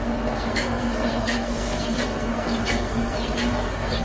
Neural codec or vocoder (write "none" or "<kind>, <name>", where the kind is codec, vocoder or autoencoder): codec, SNAC